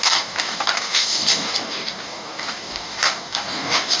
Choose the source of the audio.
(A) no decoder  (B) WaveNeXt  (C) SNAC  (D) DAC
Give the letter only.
D